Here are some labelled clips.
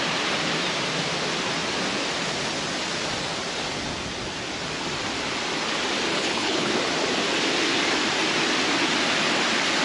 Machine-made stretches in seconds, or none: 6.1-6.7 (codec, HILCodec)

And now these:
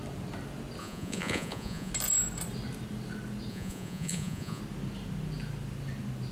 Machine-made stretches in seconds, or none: 0.8-1.9 (vocoder, Vocos); 3.5-4.6

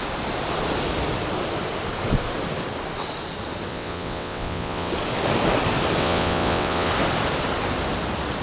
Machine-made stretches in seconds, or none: 3.7-4.9 (vocoder, WaveNeXt); 6.0-6.9

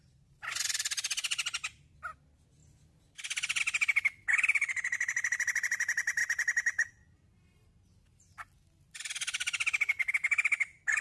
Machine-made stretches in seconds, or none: none